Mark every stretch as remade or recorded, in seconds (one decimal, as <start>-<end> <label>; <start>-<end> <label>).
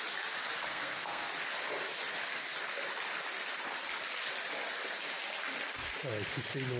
0.0-0.7 recorded; 0.7-1.3 remade; 1.3-6.8 recorded